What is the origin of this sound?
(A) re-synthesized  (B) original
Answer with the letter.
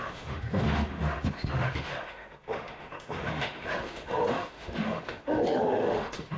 A